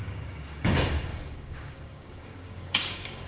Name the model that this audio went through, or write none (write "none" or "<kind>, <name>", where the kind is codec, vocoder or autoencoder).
codec, DAC